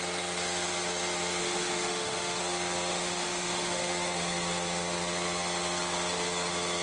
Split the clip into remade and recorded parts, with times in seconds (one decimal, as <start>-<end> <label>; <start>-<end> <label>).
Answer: 0.0-1.4 recorded; 1.4-2.4 remade; 2.4-2.9 recorded; 2.9-3.9 remade; 3.9-6.8 recorded